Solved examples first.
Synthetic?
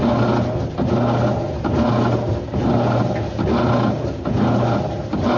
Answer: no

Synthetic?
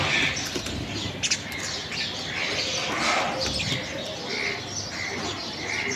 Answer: no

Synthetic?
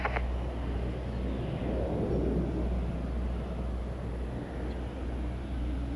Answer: no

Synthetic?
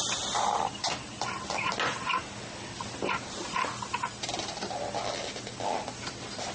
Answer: no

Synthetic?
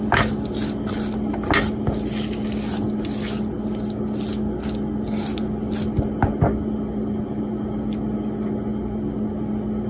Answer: no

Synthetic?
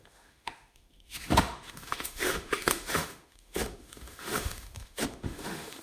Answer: yes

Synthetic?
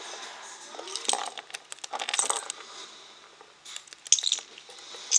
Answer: no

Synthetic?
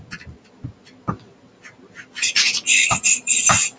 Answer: no